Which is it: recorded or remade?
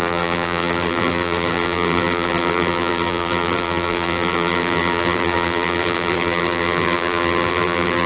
remade